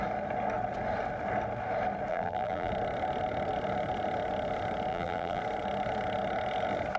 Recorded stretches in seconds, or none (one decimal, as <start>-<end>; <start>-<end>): 0.0-2.1; 2.7-4.9; 5.4-7.0